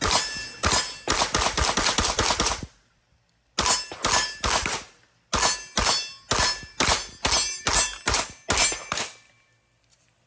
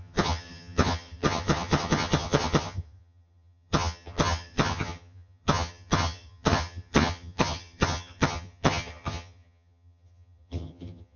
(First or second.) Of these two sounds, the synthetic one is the second